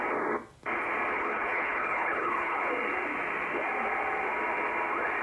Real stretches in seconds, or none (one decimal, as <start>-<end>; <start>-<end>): 0.0-1.1; 2.7-5.2